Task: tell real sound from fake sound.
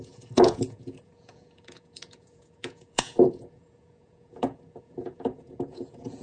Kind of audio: fake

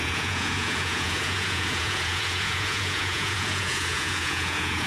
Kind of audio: fake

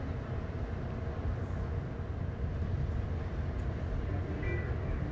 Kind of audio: real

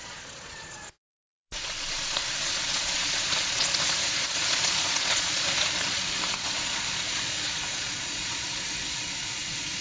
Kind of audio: fake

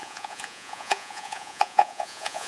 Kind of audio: fake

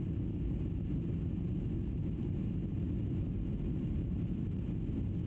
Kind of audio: real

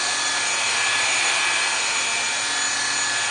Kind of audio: real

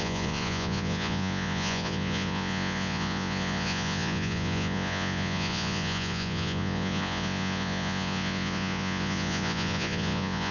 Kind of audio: fake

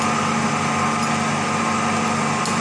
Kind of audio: real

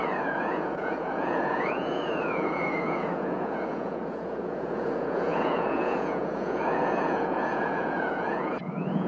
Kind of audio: fake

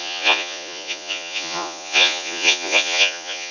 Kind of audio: fake